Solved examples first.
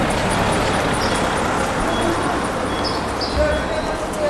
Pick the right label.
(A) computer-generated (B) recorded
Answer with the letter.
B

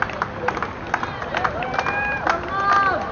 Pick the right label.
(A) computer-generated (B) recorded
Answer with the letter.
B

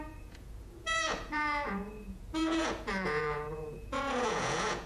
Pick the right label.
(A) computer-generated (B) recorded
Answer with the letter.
A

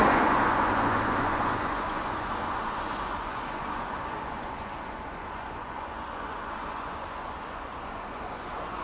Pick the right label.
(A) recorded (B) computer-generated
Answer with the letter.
B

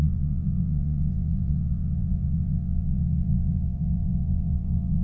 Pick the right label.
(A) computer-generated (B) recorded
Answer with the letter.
A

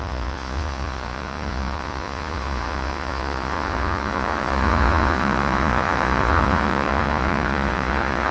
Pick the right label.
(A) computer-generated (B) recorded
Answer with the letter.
A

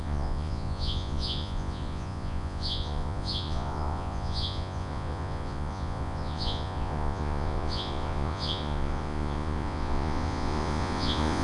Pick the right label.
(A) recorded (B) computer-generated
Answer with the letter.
B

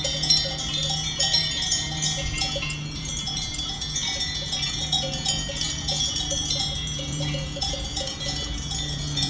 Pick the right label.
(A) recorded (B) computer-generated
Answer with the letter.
B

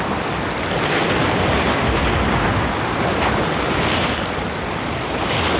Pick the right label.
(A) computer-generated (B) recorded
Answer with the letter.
B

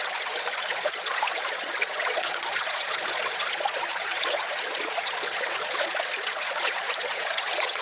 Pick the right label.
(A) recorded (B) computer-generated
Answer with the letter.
B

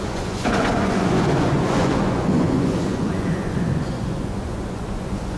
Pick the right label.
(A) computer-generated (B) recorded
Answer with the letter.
A